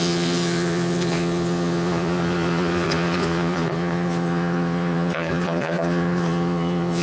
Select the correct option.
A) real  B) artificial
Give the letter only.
B